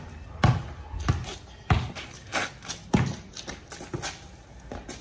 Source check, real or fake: real